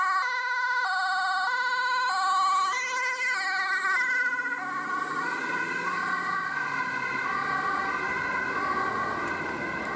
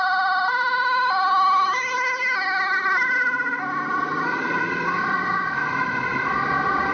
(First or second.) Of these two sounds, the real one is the first